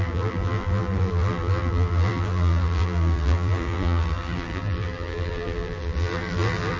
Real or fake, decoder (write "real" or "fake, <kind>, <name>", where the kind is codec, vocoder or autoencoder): fake, vocoder, BigVGAN v2